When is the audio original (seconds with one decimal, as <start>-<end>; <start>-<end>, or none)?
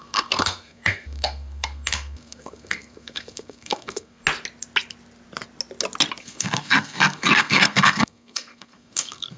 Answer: 4.2-6.2